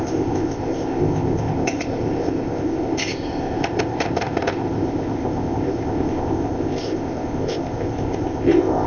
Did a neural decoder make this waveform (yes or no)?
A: yes